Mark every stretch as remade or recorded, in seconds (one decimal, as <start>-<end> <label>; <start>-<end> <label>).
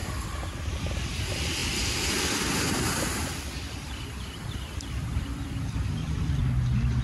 0.0-3.2 recorded; 3.2-6.4 remade; 6.4-7.0 recorded